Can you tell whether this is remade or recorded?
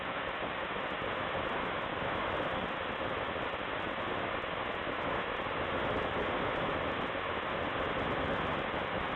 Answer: recorded